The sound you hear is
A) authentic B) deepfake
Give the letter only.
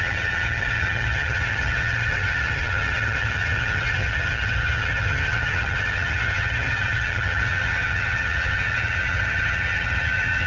B